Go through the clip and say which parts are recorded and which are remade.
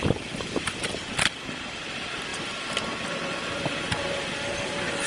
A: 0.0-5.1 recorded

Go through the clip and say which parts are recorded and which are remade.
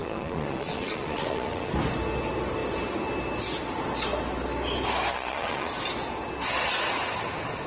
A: 0.0-1.7 remade; 1.7-5.1 recorded; 5.1-5.7 remade; 5.7-7.7 recorded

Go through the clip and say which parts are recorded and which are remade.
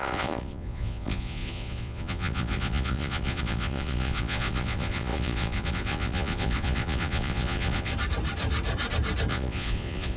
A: 0.0-7.9 remade; 7.9-9.3 recorded; 9.3-10.2 remade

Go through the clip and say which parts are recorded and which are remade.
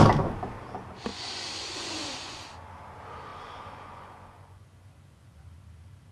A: 0.0-1.1 recorded; 1.1-2.4 remade; 2.4-3.3 recorded; 3.3-5.5 remade; 5.5-6.1 recorded